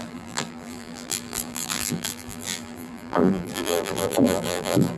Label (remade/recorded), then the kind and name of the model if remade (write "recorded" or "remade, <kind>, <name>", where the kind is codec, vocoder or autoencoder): remade, vocoder, BigVGAN v2